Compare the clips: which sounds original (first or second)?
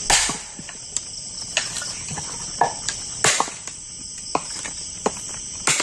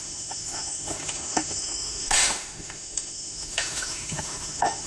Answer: first